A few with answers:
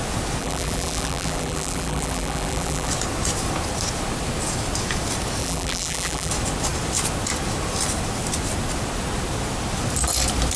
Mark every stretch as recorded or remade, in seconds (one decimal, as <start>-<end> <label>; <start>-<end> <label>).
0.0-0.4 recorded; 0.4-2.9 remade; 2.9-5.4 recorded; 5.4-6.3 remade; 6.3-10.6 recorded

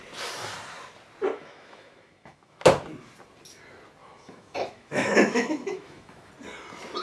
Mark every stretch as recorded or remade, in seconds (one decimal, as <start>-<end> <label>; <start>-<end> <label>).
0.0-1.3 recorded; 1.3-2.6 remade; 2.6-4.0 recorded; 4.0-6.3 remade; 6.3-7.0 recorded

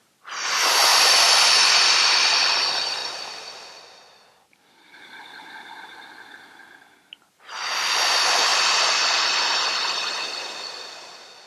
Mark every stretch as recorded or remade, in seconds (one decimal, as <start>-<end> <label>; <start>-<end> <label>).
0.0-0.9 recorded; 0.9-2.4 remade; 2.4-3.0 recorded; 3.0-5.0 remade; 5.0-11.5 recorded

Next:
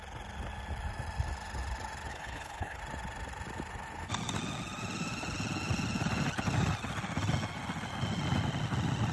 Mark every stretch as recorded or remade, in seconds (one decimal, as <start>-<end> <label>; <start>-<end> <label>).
0.0-2.1 recorded; 2.1-2.8 remade; 2.8-9.1 recorded

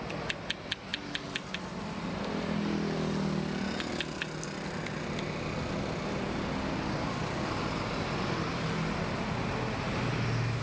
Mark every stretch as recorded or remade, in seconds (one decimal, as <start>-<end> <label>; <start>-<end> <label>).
0.0-10.6 recorded

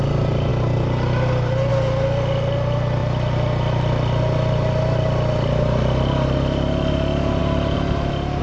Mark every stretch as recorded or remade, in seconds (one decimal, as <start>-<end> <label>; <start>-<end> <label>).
0.0-8.4 recorded

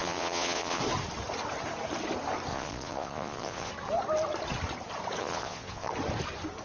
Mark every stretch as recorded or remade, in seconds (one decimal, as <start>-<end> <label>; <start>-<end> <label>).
0.0-0.8 remade; 0.8-2.5 recorded; 2.5-3.7 remade; 3.7-5.2 recorded; 5.2-5.9 remade; 5.9-6.6 recorded

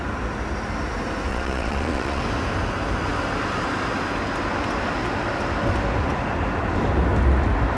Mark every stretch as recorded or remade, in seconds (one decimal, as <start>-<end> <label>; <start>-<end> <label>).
0.0-1.3 recorded; 1.3-2.2 remade; 2.2-7.8 recorded